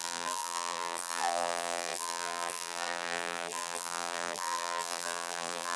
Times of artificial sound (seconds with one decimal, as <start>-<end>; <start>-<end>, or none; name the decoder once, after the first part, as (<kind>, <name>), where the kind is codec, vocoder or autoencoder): 0.0-5.8 (vocoder, BigVGAN v2)